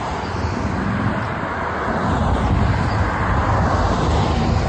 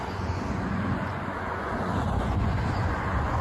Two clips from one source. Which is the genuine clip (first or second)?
first